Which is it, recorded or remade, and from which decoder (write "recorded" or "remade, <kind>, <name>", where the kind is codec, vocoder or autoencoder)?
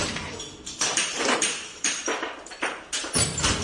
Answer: remade, vocoder, BigVGAN v2